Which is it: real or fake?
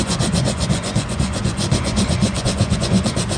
fake